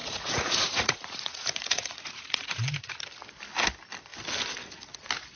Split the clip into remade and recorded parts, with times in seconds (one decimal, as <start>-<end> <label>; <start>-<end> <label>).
0.0-3.0 remade; 3.0-5.4 recorded